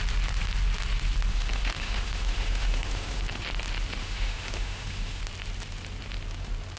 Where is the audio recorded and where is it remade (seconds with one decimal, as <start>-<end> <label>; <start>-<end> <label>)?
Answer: 0.0-1.3 recorded; 1.3-3.2 remade; 3.2-4.0 recorded; 4.0-5.2 remade; 5.2-6.8 recorded